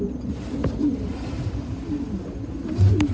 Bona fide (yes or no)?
yes